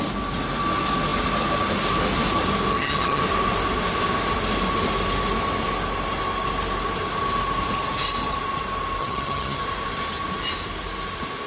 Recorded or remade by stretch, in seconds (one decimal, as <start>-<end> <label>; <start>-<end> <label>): 0.0-2.7 recorded; 2.7-3.2 remade; 3.2-9.0 recorded; 9.0-9.6 remade; 9.6-11.5 recorded